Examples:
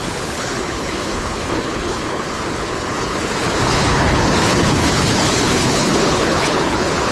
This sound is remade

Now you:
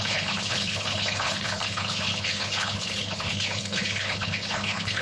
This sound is remade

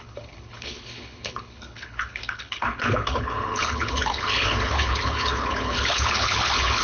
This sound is remade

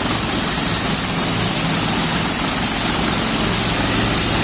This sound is recorded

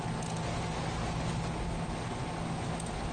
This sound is recorded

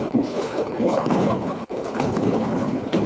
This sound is remade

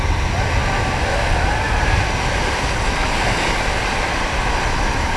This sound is recorded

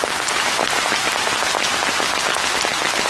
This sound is recorded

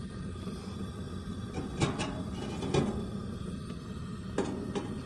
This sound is recorded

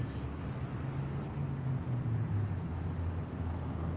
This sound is recorded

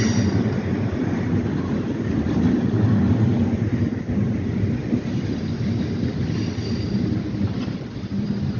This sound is recorded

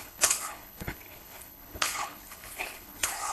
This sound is remade